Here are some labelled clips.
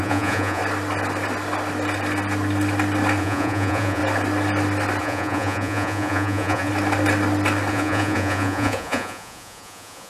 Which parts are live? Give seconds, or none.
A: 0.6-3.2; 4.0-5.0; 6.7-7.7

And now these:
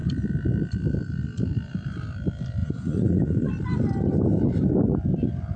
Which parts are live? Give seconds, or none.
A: 0.0-2.6; 3.5-5.6

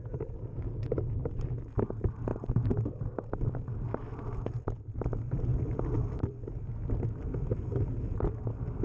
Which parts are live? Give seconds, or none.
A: 0.0-2.3; 3.5-5.5; 6.5-8.8

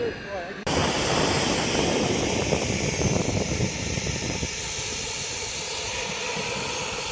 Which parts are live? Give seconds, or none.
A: 0.0-0.8; 5.0-7.1

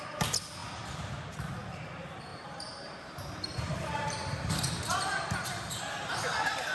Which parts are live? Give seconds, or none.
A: 0.0-2.3; 5.8-6.7

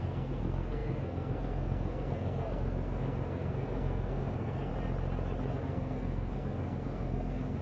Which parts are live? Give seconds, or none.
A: 4.7-5.5